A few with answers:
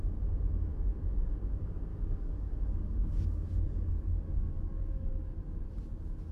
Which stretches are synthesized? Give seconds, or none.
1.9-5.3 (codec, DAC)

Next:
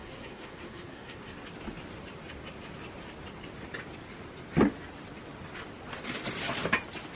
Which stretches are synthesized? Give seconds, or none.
0.0-1.4 (codec, SNAC)

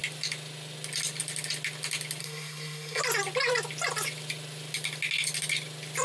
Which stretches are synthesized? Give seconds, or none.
2.2-3.0 (codec, SNAC)

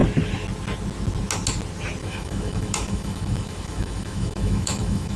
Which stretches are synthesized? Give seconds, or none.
2.0-5.2 (autoencoder, DAC-VAE)

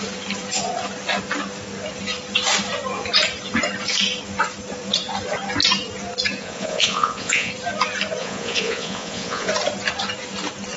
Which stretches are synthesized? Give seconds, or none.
6.4-7.5 (vocoder, Vocos); 8.2-9.5

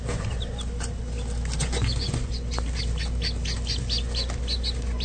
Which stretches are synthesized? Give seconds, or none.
1.6-2.3 (vocoder, Vocos)